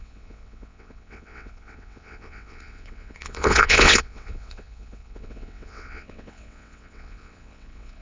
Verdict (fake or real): fake